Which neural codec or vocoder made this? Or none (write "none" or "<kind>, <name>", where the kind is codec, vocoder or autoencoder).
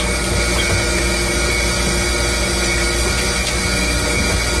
none